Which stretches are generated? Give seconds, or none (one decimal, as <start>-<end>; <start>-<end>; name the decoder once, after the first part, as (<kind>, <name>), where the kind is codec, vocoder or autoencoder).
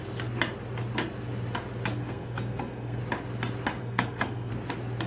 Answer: 1.9-3.0 (codec, SNAC); 3.8-4.5